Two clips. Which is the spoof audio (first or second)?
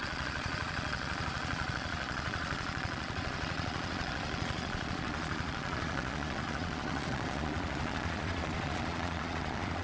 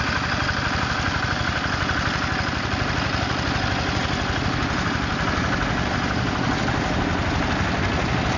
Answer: first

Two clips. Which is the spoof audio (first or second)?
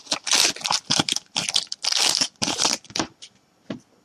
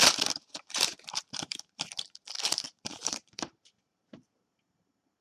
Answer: second